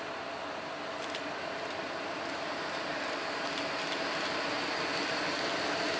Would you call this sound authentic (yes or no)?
yes